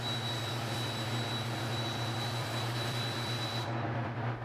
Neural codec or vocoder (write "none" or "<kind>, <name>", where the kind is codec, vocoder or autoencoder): vocoder, BigVGAN v2